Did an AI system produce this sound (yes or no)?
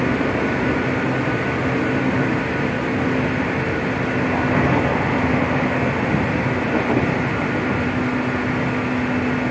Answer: no